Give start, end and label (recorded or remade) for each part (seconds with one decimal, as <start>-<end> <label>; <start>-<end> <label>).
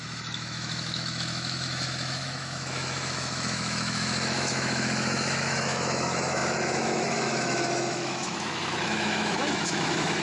0.0-10.2 remade